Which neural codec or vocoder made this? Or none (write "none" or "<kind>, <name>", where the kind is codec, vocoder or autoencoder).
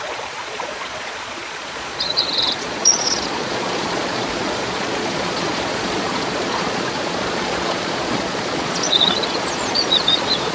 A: vocoder, Vocos